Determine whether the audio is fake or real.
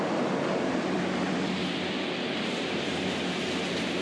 fake